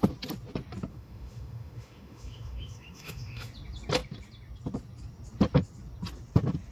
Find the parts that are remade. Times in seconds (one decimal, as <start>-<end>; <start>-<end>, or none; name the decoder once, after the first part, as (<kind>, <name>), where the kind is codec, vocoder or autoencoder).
0.9-3.5 (autoencoder, DAC-VAE)